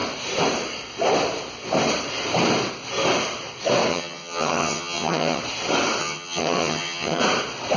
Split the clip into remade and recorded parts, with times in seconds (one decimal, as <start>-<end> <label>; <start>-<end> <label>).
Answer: 0.0-3.9 recorded; 3.9-5.4 remade; 5.4-6.0 recorded; 6.0-7.2 remade; 7.2-7.8 recorded